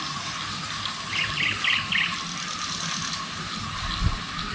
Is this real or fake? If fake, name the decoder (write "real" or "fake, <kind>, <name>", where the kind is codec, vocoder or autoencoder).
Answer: real